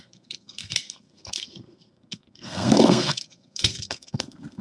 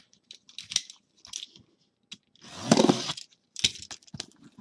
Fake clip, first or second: first